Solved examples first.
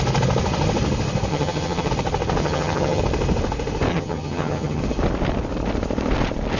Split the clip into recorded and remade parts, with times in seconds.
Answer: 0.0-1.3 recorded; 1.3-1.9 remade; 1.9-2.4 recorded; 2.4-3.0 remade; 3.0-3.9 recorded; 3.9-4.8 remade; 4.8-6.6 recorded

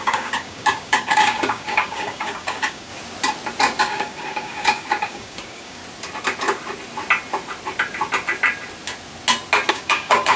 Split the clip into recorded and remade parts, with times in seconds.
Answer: 0.0-2.9 remade; 2.9-3.8 recorded; 3.8-5.8 remade; 5.8-9.7 recorded; 9.7-10.4 remade

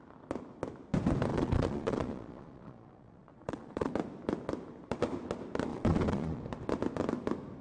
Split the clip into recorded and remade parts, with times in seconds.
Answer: 0.0-1.3 recorded; 1.3-3.9 remade; 3.9-5.7 recorded; 5.7-6.4 remade; 6.4-7.6 recorded

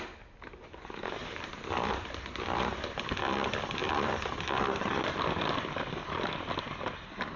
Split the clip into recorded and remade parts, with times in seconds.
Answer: 0.0-1.2 recorded; 1.2-1.9 remade; 1.9-3.8 recorded; 3.8-6.3 remade; 6.3-7.4 recorded

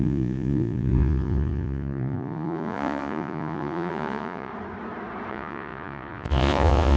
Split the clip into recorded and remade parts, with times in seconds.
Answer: 0.0-4.5 remade; 4.5-5.3 recorded; 5.3-7.0 remade

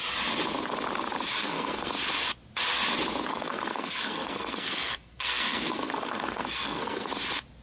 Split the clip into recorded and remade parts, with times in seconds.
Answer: 0.0-1.4 recorded; 1.4-1.9 remade; 1.9-3.3 recorded; 3.3-7.1 remade; 7.1-7.6 recorded